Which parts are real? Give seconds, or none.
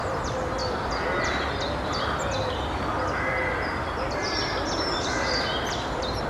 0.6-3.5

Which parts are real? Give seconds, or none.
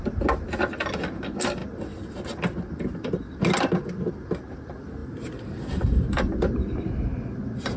0.0-5.0; 6.3-7.8